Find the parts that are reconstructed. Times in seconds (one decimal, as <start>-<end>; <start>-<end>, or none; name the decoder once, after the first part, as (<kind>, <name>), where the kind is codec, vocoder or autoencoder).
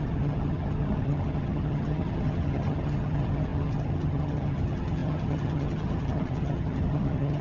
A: 0.0-7.4 (vocoder, HiFi-GAN)